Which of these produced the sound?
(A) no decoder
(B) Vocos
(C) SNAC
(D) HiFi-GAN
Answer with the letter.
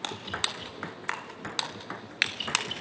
A